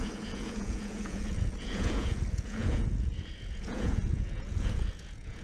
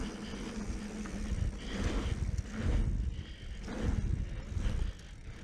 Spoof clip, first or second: first